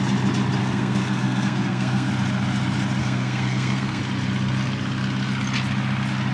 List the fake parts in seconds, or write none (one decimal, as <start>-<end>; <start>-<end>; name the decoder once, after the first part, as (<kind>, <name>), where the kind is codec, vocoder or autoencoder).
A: 0.6-2.1 (codec, SNAC); 3.0-4.0